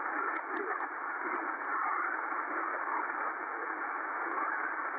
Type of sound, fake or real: real